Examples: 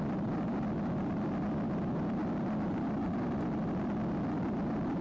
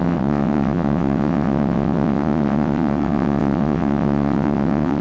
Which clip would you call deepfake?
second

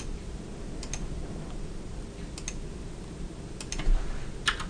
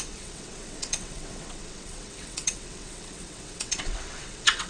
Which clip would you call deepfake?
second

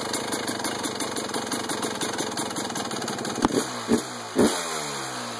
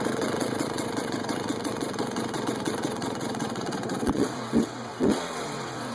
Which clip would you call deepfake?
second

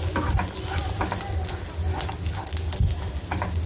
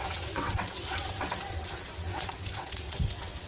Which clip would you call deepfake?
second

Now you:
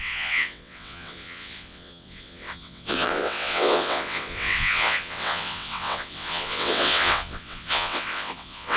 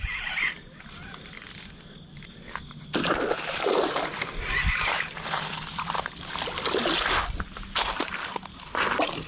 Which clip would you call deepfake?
first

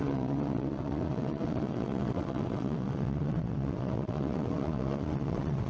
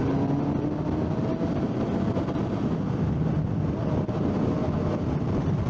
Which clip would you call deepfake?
first